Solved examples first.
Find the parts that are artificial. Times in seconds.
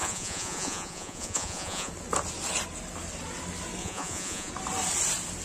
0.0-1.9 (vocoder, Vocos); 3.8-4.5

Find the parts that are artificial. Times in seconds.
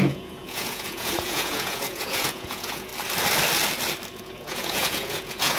0.0-2.9 (vocoder, Vocos); 4.2-5.6